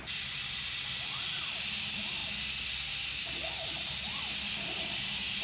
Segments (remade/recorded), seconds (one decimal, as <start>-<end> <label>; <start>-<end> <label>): 0.0-5.4 recorded